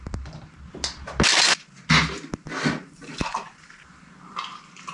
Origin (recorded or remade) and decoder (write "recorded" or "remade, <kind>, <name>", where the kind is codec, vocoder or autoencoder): recorded